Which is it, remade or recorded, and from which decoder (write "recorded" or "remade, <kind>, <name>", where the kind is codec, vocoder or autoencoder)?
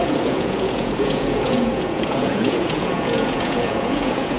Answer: remade, vocoder, Vocos